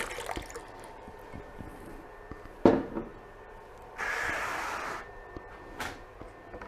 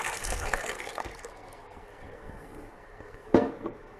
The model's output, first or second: second